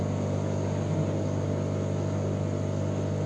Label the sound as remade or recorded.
recorded